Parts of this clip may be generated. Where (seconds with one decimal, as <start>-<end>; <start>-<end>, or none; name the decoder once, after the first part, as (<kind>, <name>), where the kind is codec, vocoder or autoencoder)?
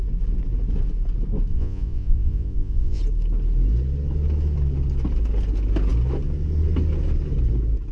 1.5-3.0 (vocoder, Vocos)